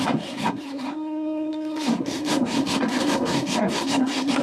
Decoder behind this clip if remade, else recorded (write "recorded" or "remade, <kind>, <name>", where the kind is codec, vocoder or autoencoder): remade, codec, SNAC